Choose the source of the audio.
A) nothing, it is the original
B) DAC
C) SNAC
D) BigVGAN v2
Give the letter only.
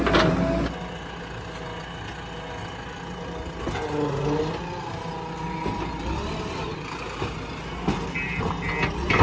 A